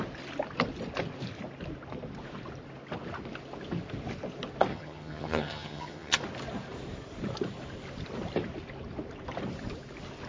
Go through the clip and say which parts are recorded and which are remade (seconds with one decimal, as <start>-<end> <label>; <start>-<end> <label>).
0.0-4.7 recorded; 4.7-6.2 remade; 6.2-10.3 recorded